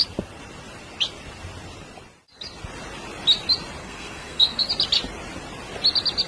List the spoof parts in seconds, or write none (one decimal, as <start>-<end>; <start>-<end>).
3.8-4.7